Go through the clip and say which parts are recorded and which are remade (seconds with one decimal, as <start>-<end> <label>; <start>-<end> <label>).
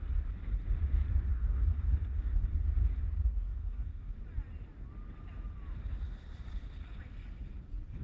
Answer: 0.0-1.3 recorded; 1.3-2.5 remade; 2.5-3.5 recorded; 3.5-4.2 remade; 4.2-8.0 recorded